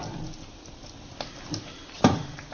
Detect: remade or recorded recorded